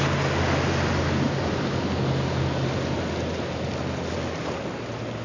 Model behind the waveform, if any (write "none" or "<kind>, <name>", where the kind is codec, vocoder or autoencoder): none